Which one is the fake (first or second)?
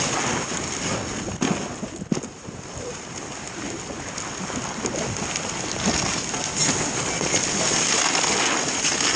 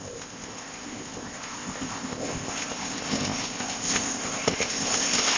second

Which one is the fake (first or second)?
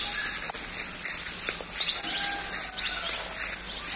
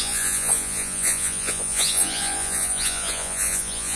second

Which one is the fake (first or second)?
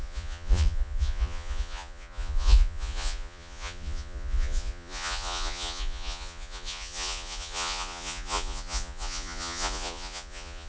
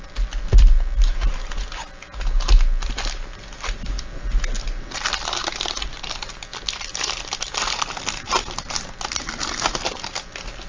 first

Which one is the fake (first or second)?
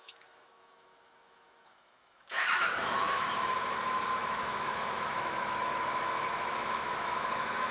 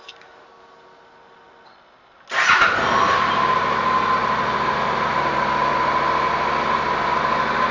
first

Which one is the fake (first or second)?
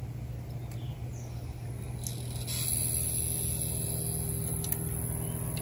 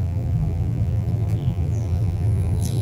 second